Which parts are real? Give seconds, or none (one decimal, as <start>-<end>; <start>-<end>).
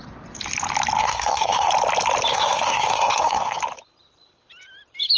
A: 0.0-1.0; 1.7-2.3; 3.6-5.2